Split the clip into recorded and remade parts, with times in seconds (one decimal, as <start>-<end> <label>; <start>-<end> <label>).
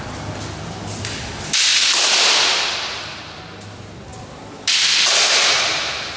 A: 0.0-1.7 recorded; 1.7-3.0 remade; 3.0-4.1 recorded; 4.1-6.2 remade